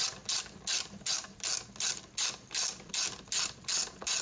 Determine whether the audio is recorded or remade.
recorded